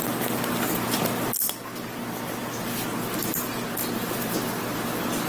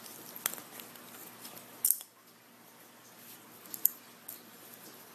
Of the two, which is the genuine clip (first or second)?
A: first